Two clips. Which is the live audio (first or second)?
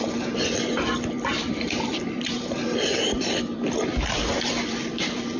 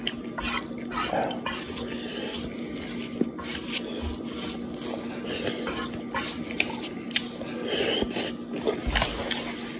second